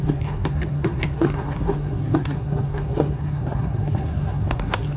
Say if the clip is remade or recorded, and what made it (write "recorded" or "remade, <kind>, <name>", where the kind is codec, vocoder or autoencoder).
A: remade, codec, SNAC